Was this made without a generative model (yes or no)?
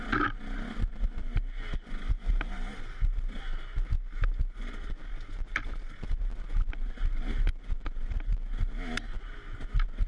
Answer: yes